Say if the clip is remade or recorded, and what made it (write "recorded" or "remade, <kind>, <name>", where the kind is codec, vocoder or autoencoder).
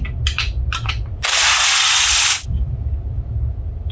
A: recorded